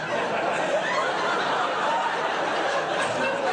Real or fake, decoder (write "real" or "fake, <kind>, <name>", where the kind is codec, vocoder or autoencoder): real